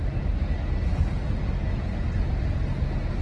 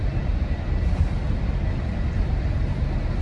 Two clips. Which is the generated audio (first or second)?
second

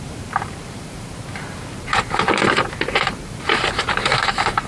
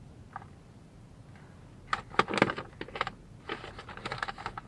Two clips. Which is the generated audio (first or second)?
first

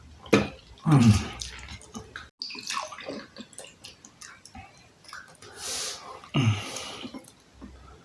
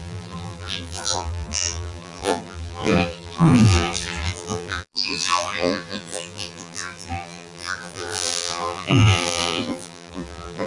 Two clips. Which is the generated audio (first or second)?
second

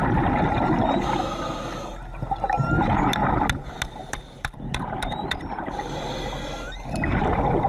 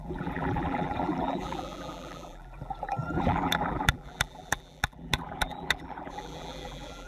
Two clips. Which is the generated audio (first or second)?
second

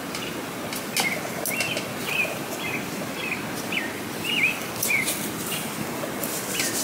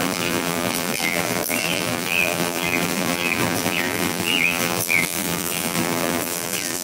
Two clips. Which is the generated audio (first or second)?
second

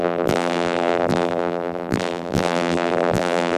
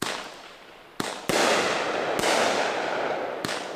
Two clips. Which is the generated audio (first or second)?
first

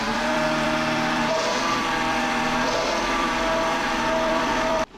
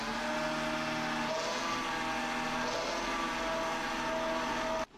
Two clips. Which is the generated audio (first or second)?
first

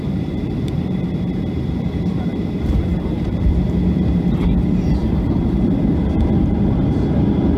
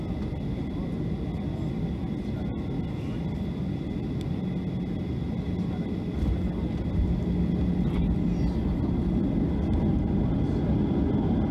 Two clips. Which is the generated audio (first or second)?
first